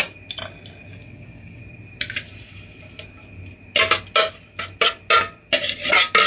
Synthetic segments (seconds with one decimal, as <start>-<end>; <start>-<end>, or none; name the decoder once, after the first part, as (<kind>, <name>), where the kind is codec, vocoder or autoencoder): 0.9-1.6 (codec, DAC)